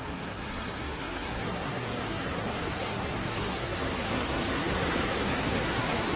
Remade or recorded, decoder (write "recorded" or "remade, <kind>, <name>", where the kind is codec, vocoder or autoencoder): remade, codec, SNAC